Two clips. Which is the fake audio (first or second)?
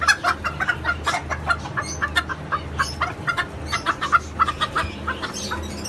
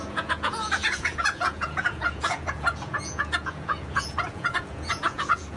second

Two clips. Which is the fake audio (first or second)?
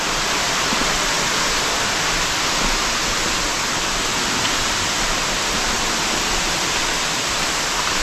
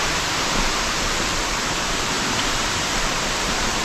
second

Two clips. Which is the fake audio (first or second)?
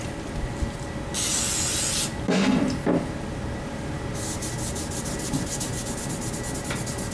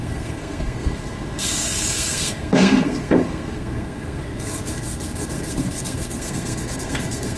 second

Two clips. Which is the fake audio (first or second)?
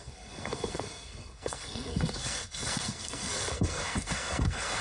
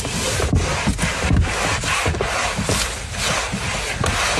first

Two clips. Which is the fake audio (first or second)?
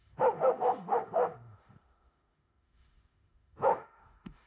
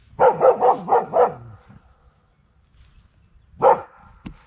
first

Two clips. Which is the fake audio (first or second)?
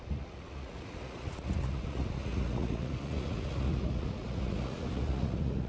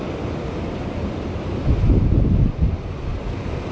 first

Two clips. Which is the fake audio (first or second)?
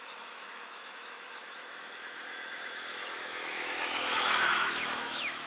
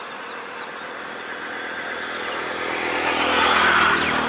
first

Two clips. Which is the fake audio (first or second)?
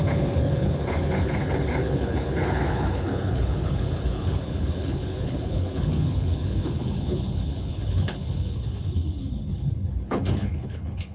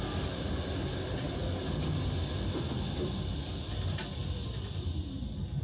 first